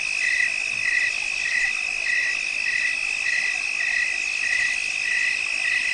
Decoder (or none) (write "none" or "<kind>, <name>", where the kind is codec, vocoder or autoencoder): none